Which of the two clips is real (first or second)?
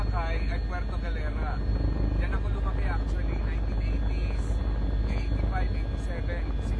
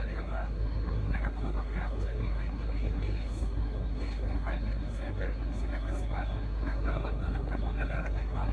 first